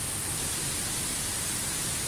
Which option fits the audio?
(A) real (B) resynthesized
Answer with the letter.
A